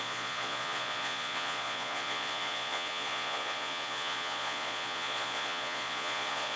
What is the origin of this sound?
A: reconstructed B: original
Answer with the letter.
A